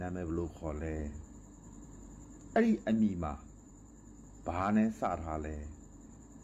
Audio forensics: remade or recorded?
remade